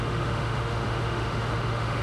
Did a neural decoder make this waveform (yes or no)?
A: yes